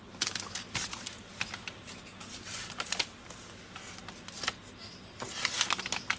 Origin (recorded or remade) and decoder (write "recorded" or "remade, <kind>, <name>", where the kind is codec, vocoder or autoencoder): recorded